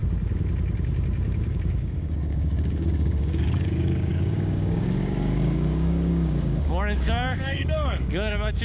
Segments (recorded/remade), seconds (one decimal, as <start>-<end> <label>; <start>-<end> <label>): 0.0-1.5 recorded; 1.5-8.6 remade